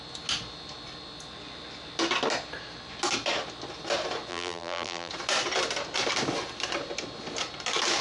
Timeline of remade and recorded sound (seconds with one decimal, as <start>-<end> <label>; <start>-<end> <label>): 0.0-4.3 recorded; 4.3-5.1 remade; 5.1-8.0 recorded